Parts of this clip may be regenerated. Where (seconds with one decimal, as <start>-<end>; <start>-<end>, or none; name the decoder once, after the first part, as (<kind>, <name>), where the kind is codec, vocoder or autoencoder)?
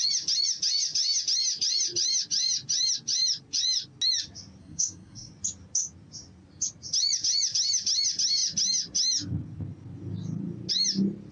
4.6-5.3 (codec, SNAC)